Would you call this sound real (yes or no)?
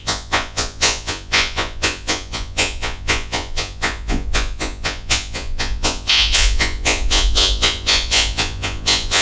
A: no